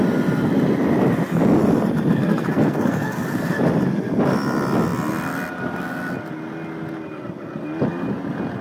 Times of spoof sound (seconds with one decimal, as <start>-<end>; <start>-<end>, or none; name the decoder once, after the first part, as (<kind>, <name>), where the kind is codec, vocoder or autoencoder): 2.1-3.6 (codec, SNAC)